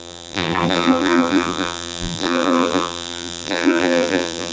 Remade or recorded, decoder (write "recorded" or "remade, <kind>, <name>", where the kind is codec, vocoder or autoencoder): remade, vocoder, BigVGAN v2